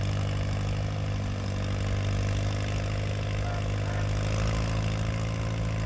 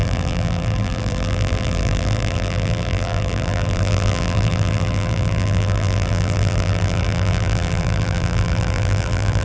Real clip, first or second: first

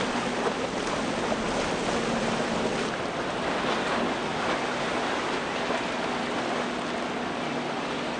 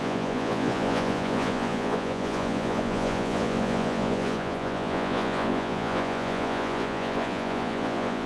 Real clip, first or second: first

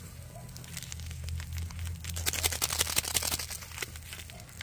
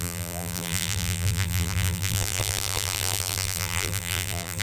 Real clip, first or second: first